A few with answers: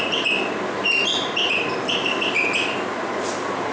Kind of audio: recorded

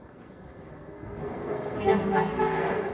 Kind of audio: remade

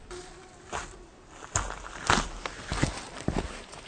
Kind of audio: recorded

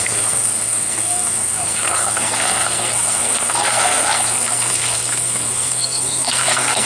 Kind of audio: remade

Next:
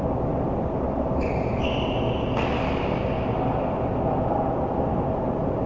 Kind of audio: recorded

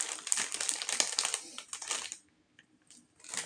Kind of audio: recorded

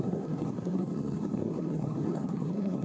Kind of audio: remade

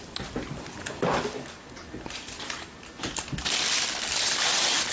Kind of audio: recorded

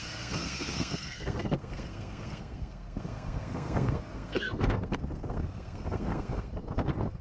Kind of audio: remade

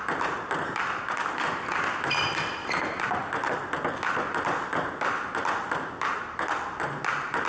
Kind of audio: recorded